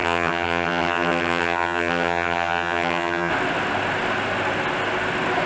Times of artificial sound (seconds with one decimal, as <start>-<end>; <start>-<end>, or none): 0.0-3.3